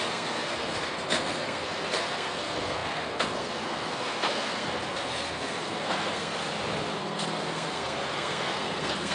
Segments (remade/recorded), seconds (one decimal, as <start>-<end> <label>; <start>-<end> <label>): 0.0-6.4 remade; 6.4-7.0 recorded; 7.0-9.1 remade